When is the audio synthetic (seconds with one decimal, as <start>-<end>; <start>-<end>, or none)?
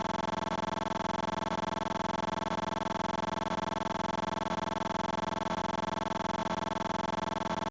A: none